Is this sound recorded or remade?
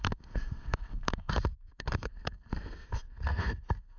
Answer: remade